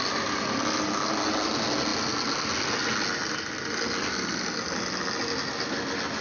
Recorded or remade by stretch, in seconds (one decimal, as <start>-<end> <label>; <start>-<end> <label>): 0.0-6.2 recorded